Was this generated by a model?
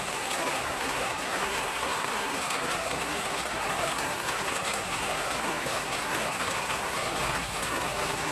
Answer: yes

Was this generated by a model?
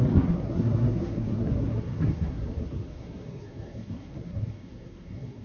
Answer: yes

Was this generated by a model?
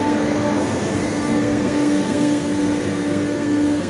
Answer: yes